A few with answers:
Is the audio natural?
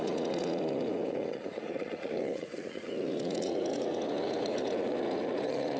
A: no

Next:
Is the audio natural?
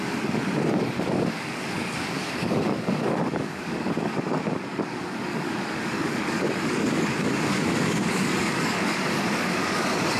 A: no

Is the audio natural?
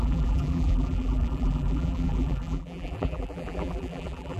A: no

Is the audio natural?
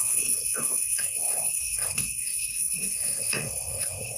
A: no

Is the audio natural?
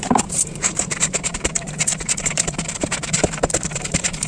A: no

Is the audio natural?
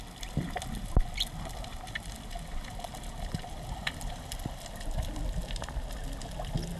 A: yes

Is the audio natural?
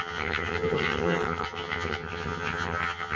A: no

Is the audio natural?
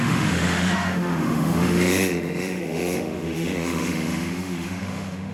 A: no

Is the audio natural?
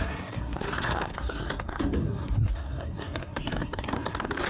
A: no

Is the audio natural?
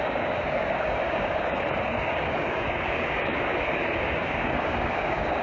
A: no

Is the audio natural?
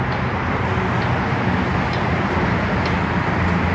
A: yes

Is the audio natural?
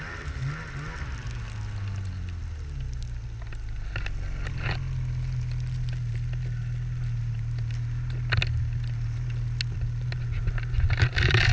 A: yes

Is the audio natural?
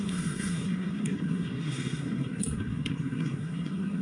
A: no